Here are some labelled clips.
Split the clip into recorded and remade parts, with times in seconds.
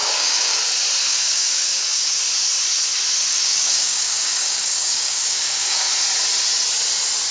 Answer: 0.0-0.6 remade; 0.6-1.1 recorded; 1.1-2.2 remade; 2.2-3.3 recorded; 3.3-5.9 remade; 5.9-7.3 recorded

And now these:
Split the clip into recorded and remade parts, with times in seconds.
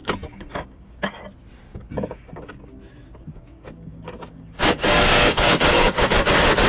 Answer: 0.0-1.1 remade; 1.1-1.7 recorded; 1.7-2.5 remade; 2.5-3.3 recorded; 3.3-6.0 remade; 6.0-6.7 recorded